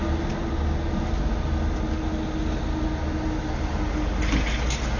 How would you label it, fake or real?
real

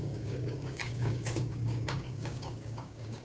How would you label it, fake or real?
fake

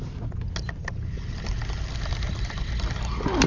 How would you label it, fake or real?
real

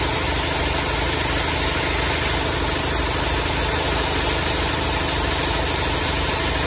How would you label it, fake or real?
real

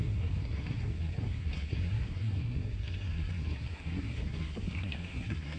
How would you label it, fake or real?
fake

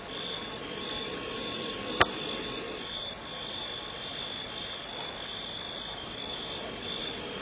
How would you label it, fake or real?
real